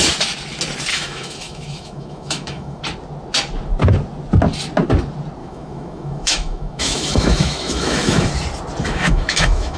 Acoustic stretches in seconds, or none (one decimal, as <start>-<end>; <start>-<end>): 0.0-0.9; 2.8-5.4; 8.3-8.8